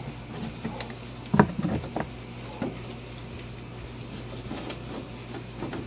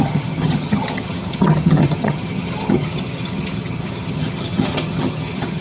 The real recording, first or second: first